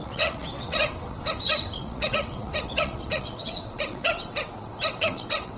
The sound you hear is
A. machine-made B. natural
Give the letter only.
A